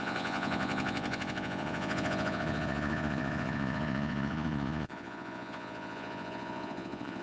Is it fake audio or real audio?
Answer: fake